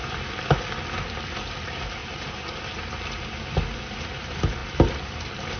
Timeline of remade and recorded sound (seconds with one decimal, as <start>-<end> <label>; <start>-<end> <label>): 0.0-0.9 recorded; 0.9-2.0 remade; 2.0-4.0 recorded; 4.0-4.6 remade; 4.6-5.6 recorded